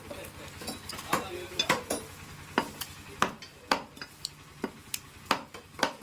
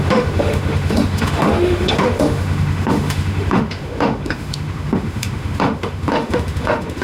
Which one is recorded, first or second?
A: first